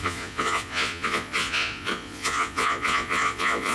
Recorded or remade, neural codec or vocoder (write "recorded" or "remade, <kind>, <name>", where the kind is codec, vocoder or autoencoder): remade, vocoder, Vocos